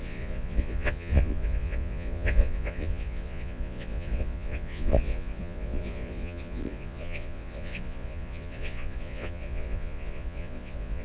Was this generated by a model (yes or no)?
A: yes